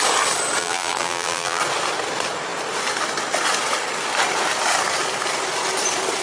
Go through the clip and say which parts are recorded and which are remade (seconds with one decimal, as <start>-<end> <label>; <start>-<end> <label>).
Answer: 0.0-0.6 recorded; 0.6-1.6 remade; 1.6-6.2 recorded